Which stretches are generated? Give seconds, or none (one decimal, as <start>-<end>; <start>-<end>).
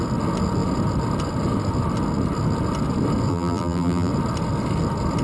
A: 3.3-4.1